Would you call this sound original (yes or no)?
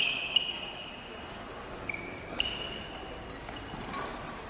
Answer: yes